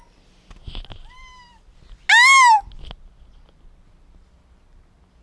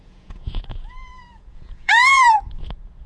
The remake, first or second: second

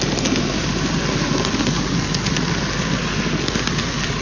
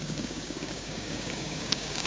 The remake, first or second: second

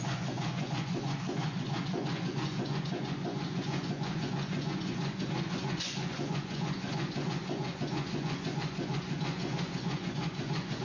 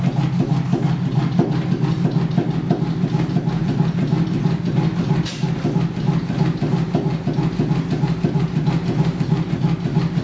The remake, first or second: first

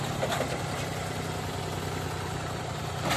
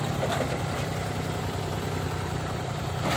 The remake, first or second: second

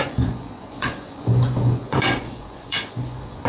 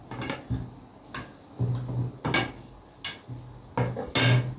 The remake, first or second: first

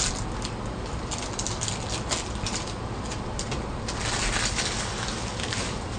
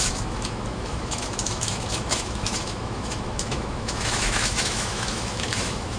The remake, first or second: second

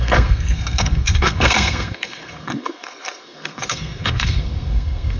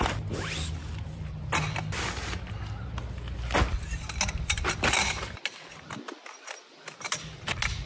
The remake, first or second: first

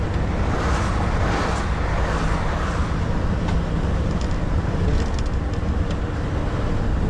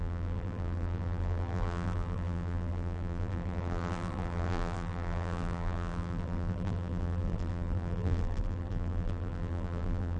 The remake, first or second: second